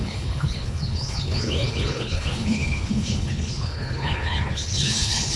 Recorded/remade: remade